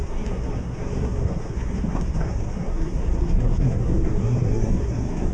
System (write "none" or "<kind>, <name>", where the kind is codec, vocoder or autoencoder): codec, SNAC